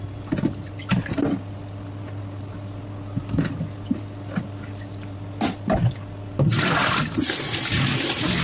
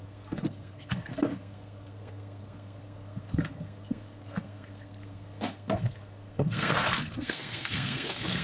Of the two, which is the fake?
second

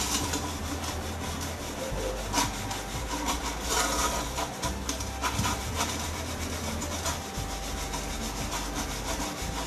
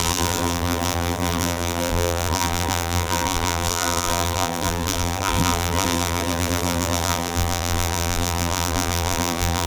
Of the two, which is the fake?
second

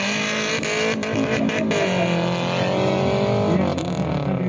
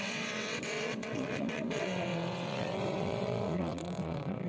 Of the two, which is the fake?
second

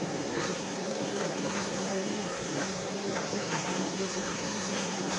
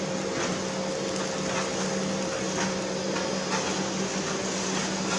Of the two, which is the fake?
first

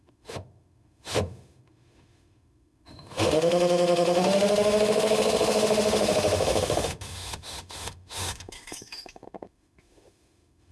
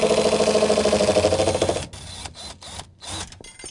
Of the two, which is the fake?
first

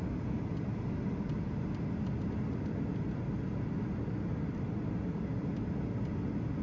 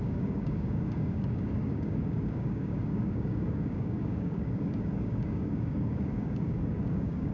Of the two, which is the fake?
second